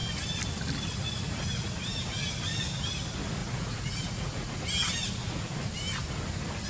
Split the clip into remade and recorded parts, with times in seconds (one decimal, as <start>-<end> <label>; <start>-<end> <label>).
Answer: 0.0-3.4 recorded; 3.4-4.6 remade; 4.6-5.0 recorded; 5.0-5.6 remade; 5.6-6.7 recorded